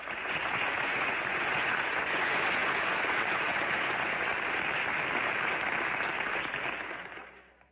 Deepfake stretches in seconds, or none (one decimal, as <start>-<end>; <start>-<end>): 0.0-4.3